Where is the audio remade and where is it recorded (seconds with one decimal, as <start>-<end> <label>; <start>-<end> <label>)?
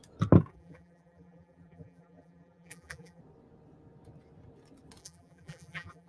0.0-0.5 recorded; 0.5-3.2 remade; 3.2-5.0 recorded; 5.0-6.1 remade